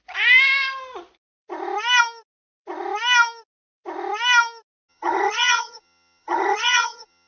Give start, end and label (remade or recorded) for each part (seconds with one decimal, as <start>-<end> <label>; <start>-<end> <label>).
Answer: 0.0-4.9 recorded; 4.9-7.3 remade